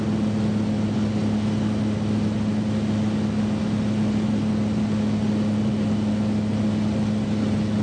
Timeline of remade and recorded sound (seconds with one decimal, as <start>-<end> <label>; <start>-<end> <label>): 0.0-7.8 recorded